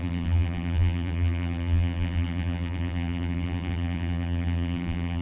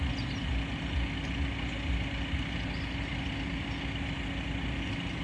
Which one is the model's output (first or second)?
first